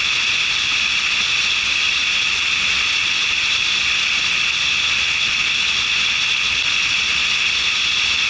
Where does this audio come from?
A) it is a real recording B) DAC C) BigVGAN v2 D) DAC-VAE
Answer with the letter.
A